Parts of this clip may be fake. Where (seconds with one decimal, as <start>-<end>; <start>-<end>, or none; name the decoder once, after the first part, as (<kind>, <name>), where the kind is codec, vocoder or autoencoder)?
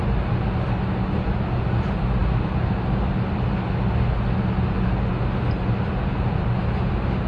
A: none